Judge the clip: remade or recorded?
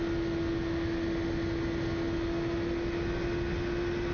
recorded